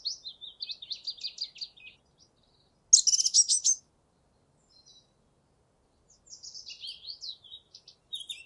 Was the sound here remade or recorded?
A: recorded